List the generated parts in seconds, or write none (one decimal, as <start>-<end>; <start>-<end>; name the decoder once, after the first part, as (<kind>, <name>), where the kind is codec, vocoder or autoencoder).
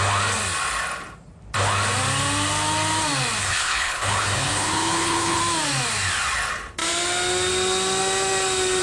3.4-5.4 (codec, HILCodec)